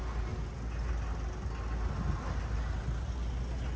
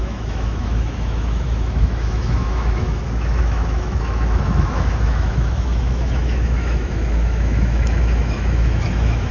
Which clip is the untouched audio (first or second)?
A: first